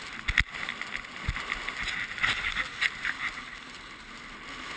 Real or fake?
real